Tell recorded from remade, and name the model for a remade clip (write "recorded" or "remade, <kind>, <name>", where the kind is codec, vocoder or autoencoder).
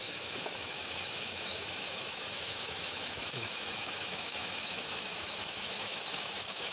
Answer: remade, autoencoder, DAC-VAE